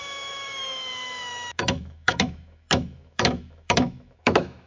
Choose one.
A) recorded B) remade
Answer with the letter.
B